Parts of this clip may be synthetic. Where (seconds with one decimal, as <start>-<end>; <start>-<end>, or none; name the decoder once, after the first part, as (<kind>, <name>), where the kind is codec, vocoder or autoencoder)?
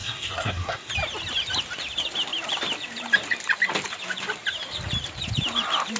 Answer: 0.0-0.9 (codec, SNAC)